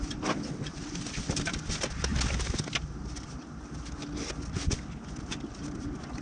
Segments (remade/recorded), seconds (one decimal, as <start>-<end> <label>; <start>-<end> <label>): 0.0-6.2 recorded